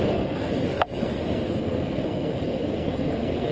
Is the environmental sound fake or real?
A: fake